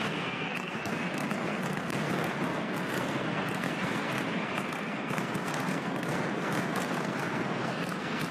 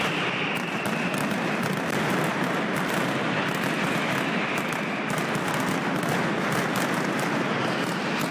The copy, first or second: first